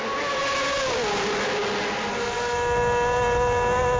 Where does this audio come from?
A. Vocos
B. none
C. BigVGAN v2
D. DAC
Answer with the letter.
B